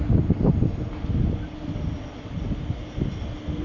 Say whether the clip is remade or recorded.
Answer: recorded